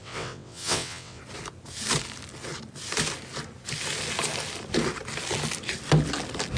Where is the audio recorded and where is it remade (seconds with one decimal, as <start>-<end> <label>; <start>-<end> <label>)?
0.0-1.2 remade; 1.2-6.6 recorded